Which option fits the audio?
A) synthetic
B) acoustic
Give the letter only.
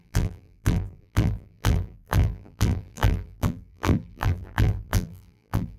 A